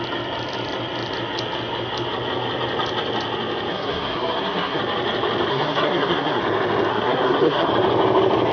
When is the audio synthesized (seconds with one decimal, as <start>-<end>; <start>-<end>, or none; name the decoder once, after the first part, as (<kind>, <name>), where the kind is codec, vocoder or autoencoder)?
3.7-4.8 (codec, SNAC); 5.5-6.4; 6.9-7.7